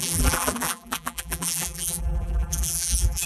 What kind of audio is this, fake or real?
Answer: fake